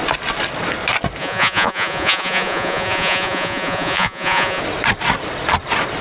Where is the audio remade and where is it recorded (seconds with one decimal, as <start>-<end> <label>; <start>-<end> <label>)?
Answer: 0.0-1.2 recorded; 1.2-4.6 remade; 4.6-6.0 recorded